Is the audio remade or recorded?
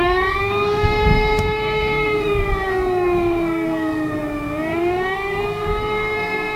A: remade